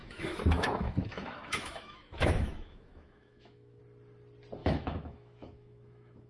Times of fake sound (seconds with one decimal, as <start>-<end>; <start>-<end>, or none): 0.0-3.8; 4.6-6.3